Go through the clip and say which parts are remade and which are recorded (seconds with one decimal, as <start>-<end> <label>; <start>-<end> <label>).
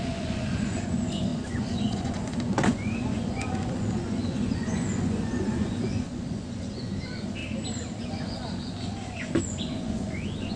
0.0-7.4 remade; 7.4-8.0 recorded; 8.0-10.6 remade